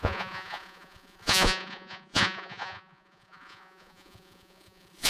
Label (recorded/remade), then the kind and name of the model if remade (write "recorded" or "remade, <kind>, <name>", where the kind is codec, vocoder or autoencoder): remade, vocoder, Vocos